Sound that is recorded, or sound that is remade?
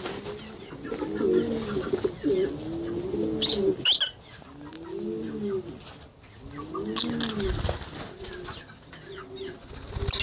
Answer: recorded